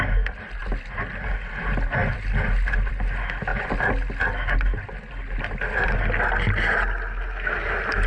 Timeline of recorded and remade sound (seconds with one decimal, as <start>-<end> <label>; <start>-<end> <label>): 0.0-8.1 recorded